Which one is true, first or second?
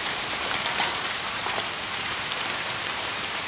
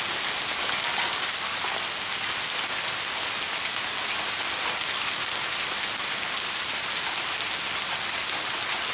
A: second